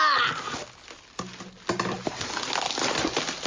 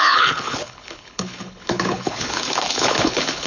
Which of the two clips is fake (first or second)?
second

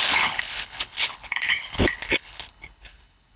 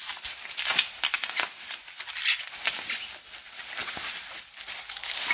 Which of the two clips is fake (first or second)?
first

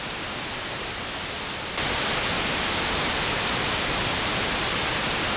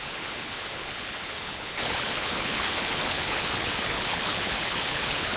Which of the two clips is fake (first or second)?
second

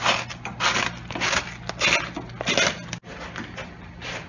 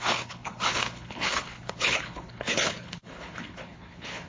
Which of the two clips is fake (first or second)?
second